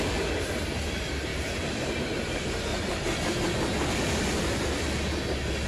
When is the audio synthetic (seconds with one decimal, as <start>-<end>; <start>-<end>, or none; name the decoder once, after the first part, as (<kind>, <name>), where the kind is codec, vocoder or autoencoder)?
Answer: 1.3-2.2 (vocoder, BigVGAN v2); 2.7-4.8